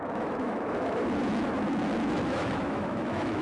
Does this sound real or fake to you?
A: fake